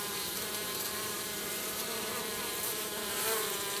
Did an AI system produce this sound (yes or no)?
yes